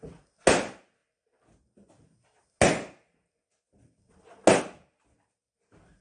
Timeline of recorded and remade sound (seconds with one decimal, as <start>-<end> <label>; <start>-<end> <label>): 0.0-6.0 recorded